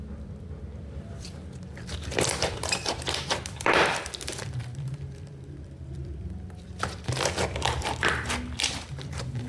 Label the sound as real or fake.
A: fake